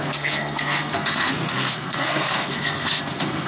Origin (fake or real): fake